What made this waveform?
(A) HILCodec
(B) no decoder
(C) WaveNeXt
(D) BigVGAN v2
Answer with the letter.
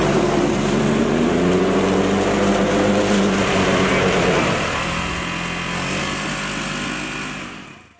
B